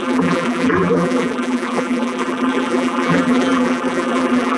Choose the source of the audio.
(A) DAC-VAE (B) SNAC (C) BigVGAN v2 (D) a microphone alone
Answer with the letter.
C